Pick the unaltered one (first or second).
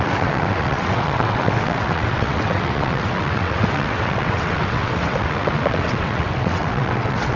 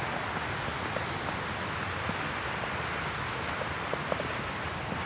second